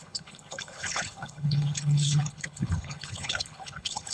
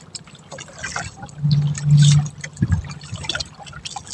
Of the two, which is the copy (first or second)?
first